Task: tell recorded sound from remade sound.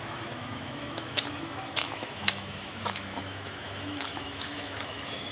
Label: remade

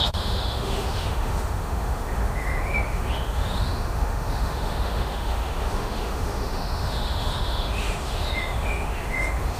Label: remade